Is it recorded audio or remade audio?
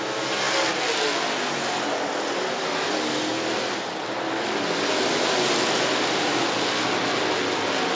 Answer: recorded